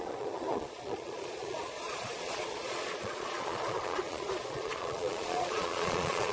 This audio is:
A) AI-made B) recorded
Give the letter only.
A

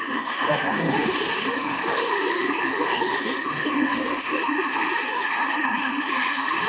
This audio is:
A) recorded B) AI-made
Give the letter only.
B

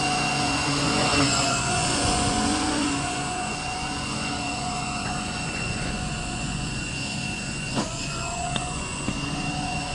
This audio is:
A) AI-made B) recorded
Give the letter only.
A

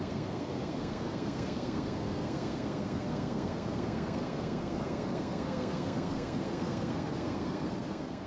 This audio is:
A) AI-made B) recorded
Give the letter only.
A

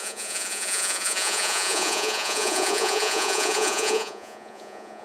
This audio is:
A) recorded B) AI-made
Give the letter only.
B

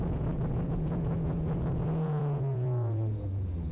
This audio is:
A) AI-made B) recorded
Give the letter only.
A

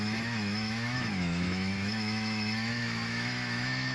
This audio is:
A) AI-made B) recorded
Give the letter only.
A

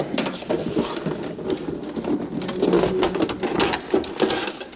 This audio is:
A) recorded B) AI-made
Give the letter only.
A